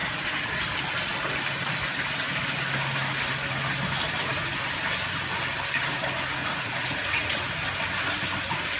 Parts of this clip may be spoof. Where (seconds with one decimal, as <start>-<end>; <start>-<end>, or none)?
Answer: 6.4-7.4